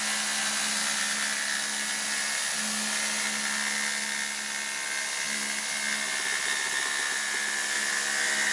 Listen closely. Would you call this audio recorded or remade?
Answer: recorded